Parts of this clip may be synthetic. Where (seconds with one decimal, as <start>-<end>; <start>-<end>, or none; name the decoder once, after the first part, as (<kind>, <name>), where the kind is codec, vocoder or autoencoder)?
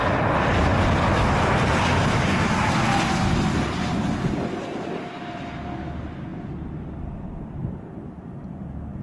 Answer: none